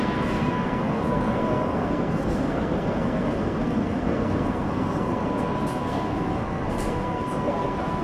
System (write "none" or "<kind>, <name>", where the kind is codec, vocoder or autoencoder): codec, SNAC